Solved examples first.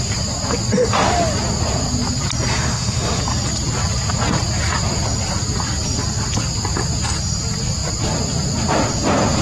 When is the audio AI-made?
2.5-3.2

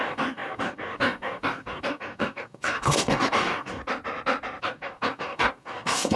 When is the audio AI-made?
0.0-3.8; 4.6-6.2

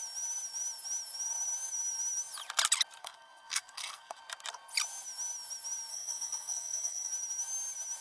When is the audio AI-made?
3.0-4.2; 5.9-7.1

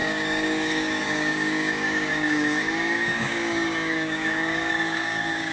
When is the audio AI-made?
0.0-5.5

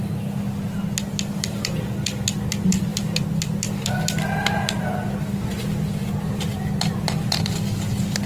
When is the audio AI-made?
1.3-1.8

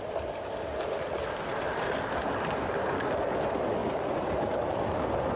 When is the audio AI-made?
3.8-4.8

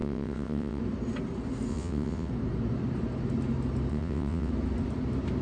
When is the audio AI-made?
0.0-0.8; 1.7-2.3; 3.9-4.5

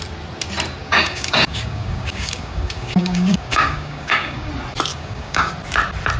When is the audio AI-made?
0.8-4.5; 4.9-5.5